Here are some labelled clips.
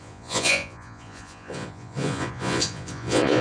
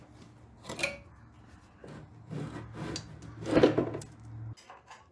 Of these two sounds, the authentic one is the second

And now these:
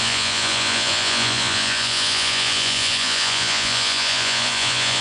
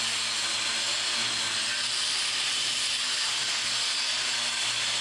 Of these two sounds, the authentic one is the second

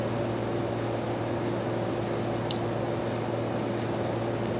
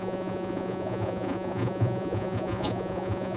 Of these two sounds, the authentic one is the first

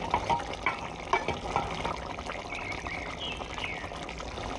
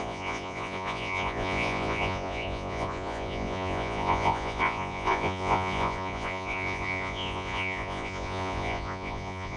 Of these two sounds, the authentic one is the first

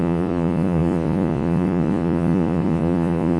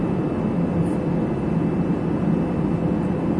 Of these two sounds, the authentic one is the second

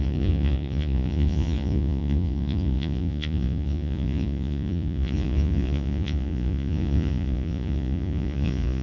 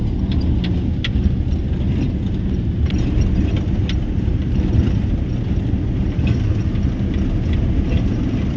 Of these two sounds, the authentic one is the second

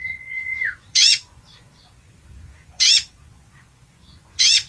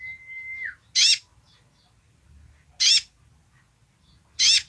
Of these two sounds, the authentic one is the second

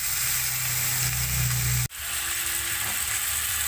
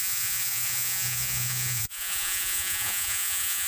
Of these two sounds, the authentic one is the first